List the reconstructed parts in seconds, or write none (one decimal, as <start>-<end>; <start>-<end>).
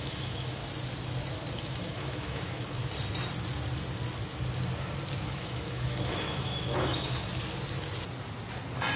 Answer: 0.0-0.6; 1.5-2.8; 5.3-7.3